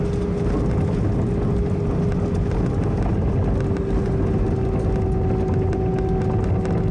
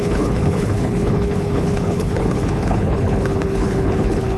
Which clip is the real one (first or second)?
first